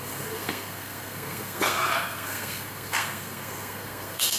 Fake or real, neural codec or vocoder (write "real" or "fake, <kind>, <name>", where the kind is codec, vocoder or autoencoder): fake, codec, SNAC